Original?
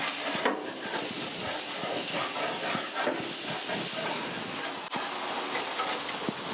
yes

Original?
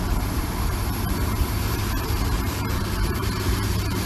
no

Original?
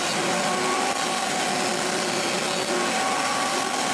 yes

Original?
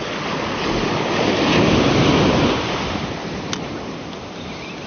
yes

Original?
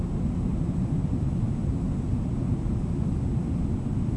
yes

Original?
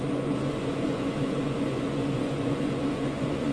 no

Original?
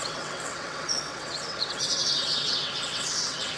no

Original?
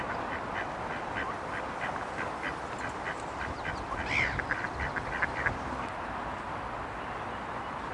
yes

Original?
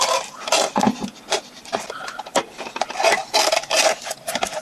no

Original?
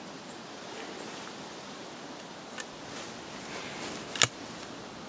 yes